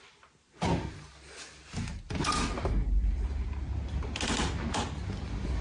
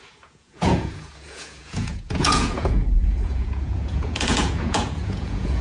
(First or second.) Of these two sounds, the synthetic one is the second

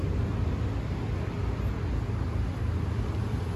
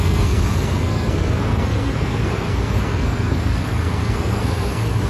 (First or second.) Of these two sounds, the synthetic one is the second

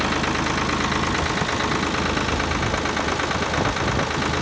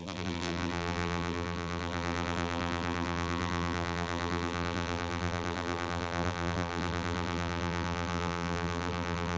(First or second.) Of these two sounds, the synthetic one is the second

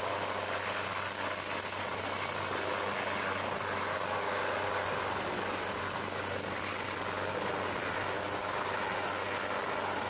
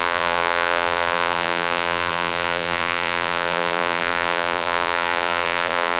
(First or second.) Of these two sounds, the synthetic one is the second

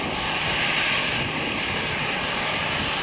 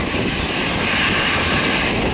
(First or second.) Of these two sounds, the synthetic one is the second